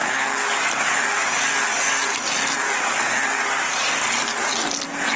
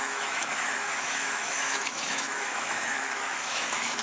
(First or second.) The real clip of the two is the first